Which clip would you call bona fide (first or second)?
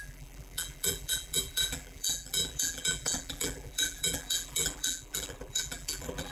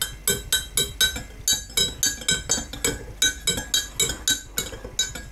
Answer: second